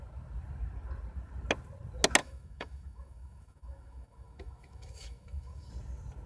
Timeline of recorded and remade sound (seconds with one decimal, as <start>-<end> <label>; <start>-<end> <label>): 0.0-2.2 recorded; 2.2-5.7 remade; 5.7-6.3 recorded